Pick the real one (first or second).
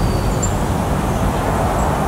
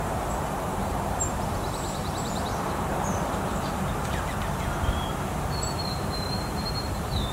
first